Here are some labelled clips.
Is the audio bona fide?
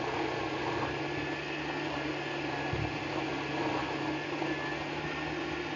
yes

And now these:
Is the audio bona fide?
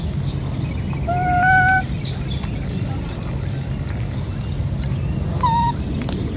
yes